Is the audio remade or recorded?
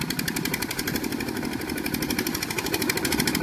recorded